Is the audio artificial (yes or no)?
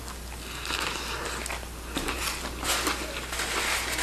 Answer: no